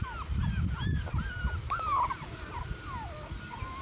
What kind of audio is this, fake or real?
real